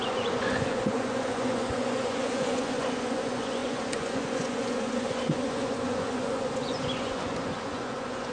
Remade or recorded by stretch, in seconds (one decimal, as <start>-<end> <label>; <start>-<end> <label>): 0.0-8.3 remade